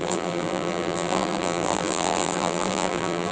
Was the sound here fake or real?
fake